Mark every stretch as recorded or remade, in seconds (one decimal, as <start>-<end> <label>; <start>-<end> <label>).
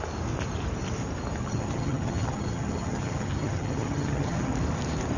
0.0-1.4 recorded; 1.4-4.5 remade; 4.5-5.2 recorded